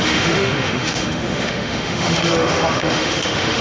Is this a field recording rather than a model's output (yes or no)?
no